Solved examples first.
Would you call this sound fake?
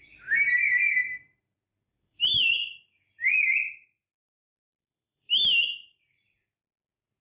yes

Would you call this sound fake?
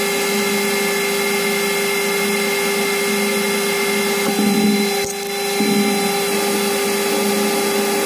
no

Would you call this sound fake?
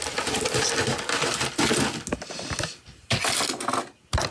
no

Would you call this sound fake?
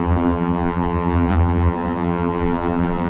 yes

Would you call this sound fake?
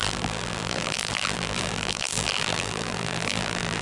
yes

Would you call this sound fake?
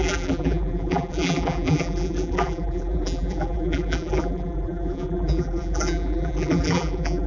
yes